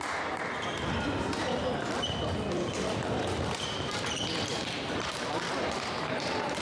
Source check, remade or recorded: remade